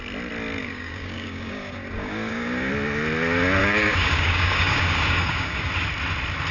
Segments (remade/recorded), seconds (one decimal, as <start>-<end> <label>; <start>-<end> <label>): 0.0-0.6 recorded; 0.6-2.7 remade; 2.7-3.6 recorded; 3.6-5.7 remade; 5.7-6.5 recorded